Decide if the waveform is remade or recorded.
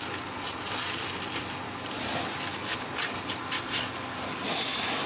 recorded